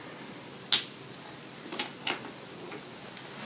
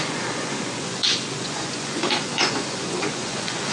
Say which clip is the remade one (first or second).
second